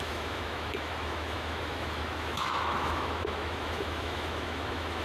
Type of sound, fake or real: fake